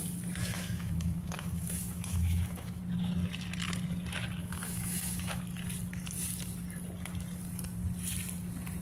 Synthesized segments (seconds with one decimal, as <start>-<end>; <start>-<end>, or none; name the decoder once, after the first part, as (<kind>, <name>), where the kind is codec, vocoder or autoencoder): 0.4-2.8 (autoencoder, DAC-VAE); 4.4-5.4